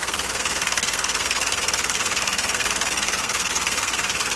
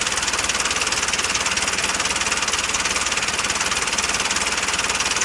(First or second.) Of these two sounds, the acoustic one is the second